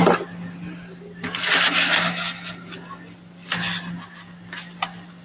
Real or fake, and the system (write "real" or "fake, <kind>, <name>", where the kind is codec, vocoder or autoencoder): real